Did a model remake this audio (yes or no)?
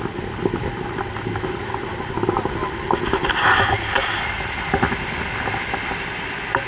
no